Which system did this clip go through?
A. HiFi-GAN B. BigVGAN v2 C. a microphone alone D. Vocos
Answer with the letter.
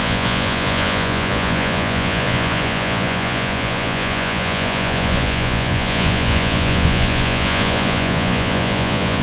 D